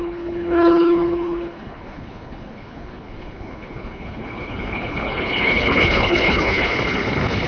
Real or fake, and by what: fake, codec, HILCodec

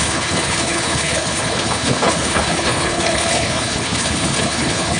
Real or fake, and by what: fake, codec, HILCodec